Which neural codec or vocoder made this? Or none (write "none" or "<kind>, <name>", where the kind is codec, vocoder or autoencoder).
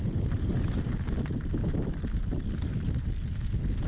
none